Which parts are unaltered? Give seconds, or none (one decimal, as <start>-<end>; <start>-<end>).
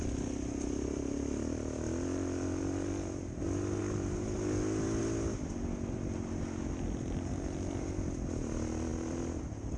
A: 0.0-9.8